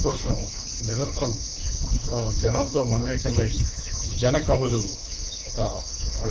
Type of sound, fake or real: fake